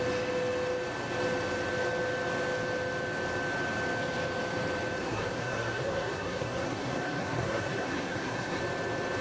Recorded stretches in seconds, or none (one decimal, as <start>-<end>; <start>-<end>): 0.0-5.0; 8.6-9.2